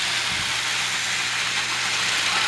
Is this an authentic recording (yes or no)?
yes